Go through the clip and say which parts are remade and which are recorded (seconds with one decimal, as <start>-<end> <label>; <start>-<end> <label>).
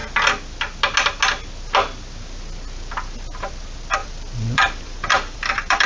0.0-4.0 recorded; 4.0-5.9 remade